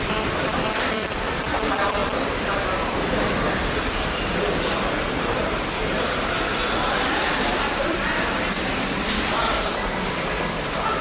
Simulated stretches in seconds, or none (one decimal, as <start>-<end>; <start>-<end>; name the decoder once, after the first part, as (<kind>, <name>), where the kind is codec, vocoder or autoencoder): 0.0-11.0 (vocoder, BigVGAN v2)